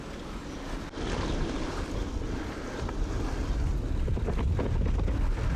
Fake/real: real